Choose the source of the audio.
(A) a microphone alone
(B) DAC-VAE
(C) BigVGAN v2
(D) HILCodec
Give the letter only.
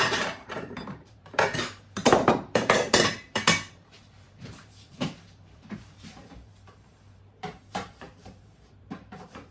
C